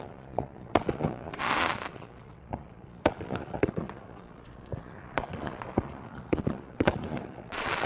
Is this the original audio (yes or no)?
no